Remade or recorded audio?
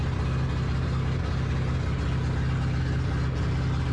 recorded